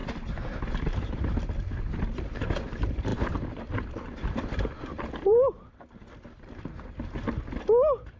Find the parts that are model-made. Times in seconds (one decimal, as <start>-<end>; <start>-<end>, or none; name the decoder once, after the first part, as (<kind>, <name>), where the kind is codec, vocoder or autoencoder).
3.1-7.4 (vocoder, BigVGAN v2)